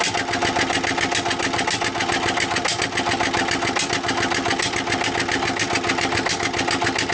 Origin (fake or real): real